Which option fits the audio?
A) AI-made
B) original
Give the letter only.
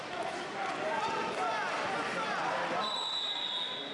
B